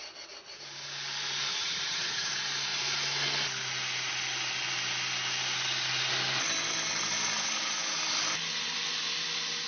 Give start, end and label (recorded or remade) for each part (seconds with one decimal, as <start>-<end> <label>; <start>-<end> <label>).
0.0-1.5 recorded; 1.5-2.3 remade; 2.3-9.7 recorded